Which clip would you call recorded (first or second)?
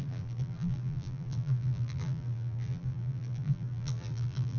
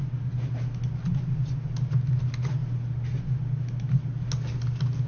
second